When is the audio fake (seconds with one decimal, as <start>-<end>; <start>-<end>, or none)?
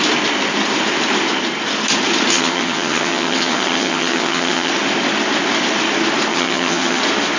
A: 2.3-4.7; 6.3-7.0